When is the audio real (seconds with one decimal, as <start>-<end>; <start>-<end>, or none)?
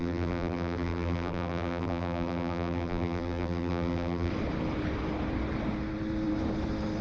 4.3-7.0